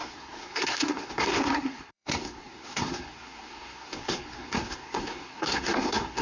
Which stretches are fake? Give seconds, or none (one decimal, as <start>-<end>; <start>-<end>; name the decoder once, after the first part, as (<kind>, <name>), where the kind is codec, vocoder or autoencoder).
0.0-6.2 (codec, SNAC)